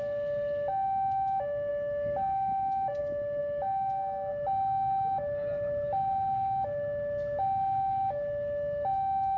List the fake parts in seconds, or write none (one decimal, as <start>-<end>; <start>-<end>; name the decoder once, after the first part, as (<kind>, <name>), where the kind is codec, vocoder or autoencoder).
none